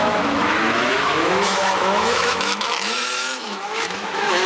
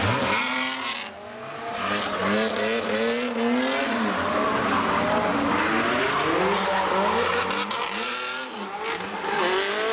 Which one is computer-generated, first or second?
first